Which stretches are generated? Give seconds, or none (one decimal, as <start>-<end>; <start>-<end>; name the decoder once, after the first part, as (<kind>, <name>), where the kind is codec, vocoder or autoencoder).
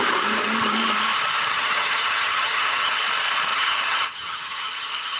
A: 1.5-3.0 (vocoder, HiFi-GAN); 3.5-5.2